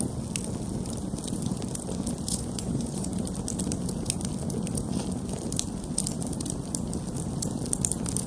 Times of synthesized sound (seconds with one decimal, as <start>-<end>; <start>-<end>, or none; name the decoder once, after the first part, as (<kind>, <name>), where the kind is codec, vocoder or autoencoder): 2.3-3.1 (vocoder, Vocos)